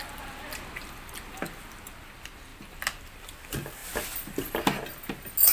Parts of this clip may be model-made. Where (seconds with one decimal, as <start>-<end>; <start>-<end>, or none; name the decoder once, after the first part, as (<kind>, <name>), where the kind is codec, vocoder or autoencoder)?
none